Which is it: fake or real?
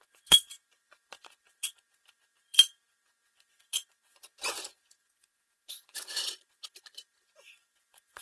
fake